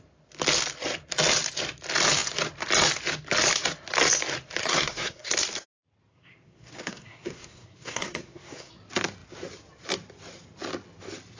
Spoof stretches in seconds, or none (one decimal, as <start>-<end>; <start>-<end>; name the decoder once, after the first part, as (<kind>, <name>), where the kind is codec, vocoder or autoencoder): 4.6-5.3 (codec, SNAC); 6.1-8.7